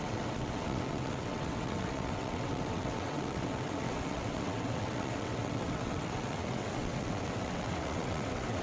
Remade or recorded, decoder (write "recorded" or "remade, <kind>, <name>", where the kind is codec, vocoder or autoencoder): remade, vocoder, WaveNeXt